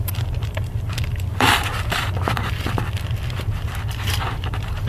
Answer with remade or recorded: remade